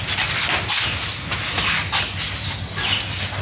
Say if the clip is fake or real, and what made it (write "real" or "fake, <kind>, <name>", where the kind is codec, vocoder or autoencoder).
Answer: real